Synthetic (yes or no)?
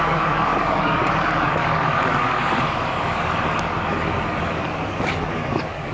yes